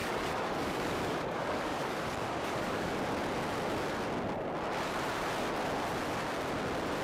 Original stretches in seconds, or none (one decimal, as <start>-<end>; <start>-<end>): 2.9-7.0